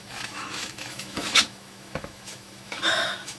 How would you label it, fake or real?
fake